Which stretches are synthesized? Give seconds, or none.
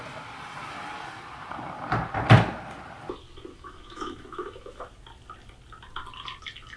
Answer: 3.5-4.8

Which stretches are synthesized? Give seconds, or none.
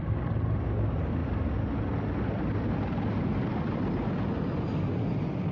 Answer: none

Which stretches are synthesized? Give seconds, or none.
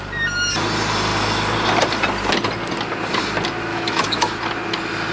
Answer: 3.7-4.4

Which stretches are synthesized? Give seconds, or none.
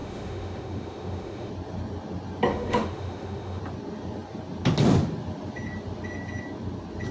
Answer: 0.0-1.5; 2.5-3.6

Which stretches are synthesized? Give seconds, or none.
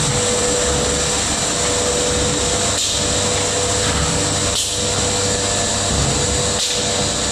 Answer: none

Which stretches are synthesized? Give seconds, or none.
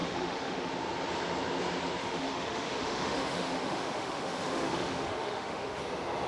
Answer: 0.0-0.7; 2.0-5.8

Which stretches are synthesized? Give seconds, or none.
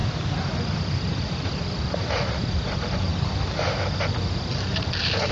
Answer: none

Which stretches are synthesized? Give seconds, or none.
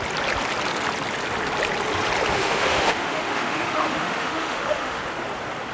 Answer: 2.3-5.0